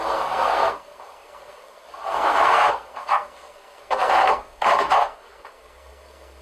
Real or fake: fake